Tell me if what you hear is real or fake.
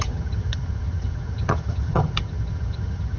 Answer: fake